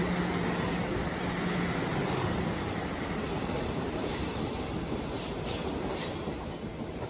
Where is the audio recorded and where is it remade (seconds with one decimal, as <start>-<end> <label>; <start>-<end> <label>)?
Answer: 0.0-1.9 recorded; 1.9-4.7 remade; 4.7-7.1 recorded